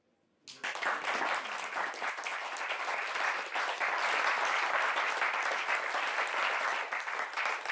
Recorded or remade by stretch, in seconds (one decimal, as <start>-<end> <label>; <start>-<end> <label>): 0.0-7.7 recorded